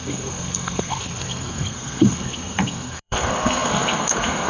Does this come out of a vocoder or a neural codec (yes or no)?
yes